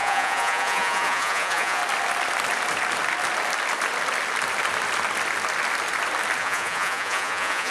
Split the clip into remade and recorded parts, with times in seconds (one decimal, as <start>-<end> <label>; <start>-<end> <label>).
0.0-1.8 remade; 1.8-6.4 recorded; 6.4-7.7 remade

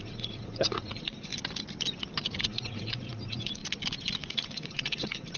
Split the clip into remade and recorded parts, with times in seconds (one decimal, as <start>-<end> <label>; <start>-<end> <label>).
0.0-1.3 remade; 1.3-2.4 recorded; 2.4-3.6 remade; 3.6-4.3 recorded; 4.3-5.4 remade